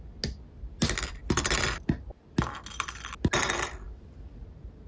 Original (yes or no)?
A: yes